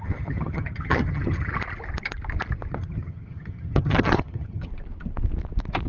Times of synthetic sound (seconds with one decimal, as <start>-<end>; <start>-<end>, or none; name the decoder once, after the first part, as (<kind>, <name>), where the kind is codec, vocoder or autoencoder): 0.0-1.5 (vocoder, HiFi-GAN); 2.7-4.7